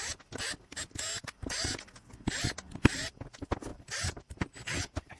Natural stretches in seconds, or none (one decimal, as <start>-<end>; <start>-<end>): 0.0-3.7; 4.5-5.2